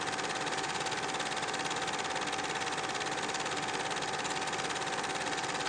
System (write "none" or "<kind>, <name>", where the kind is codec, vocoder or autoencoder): none